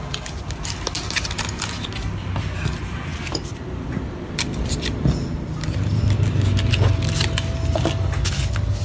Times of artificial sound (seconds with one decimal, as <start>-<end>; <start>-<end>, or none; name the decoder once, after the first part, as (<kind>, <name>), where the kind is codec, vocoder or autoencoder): 3.1-5.3 (vocoder, BigVGAN v2)